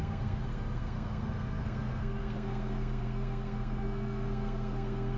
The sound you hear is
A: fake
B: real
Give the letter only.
A